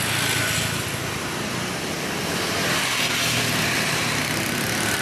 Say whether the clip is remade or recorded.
recorded